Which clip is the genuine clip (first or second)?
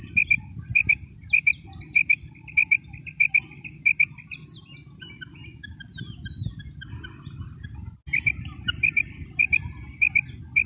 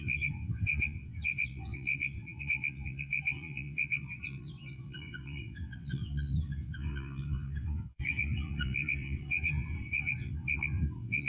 first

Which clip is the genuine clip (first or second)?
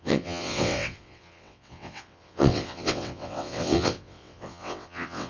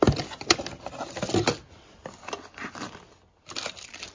second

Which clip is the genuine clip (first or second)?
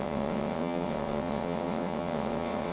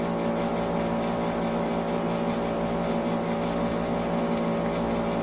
second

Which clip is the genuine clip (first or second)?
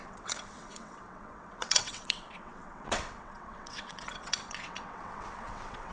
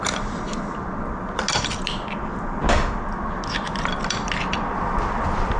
second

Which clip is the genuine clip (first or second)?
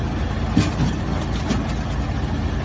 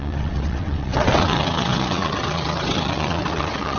first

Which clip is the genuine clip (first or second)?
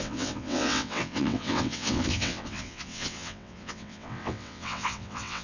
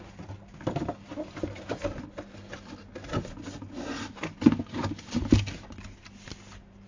second